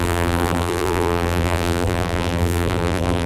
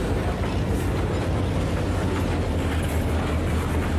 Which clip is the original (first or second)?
second